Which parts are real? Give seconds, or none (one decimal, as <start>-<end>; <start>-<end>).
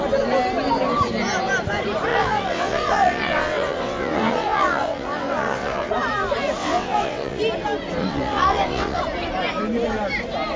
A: 0.0-2.1; 5.9-6.6; 7.4-8.0; 9.0-10.6